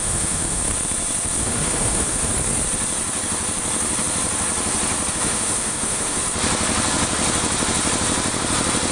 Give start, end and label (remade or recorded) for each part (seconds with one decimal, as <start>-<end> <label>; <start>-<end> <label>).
0.0-0.6 remade; 0.6-1.4 recorded; 1.4-2.3 remade; 2.3-5.1 recorded; 5.1-6.2 remade; 6.2-8.9 recorded